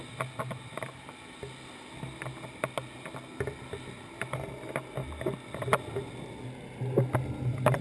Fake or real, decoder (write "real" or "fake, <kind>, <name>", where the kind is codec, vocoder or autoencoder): real